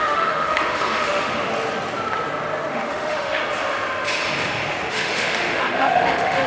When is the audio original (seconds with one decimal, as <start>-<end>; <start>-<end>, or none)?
1.4-2.7; 3.4-4.9